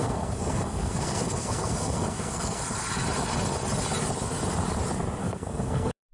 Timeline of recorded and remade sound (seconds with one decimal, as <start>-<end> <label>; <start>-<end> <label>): 0.0-2.6 remade; 2.6-5.2 recorded; 5.2-6.1 remade